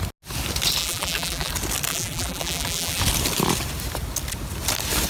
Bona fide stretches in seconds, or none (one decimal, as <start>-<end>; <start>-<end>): 0.0-0.8; 1.5-1.9; 3.0-5.1